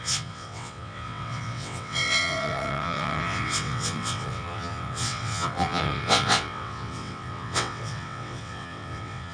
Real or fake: fake